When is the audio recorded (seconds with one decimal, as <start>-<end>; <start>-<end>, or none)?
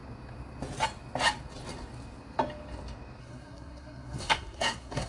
0.0-3.2